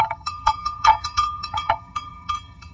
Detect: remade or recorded remade